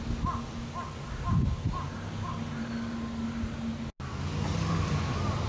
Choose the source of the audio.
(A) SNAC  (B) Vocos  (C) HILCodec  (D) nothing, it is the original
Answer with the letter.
D